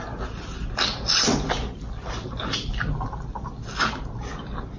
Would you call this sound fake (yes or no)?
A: no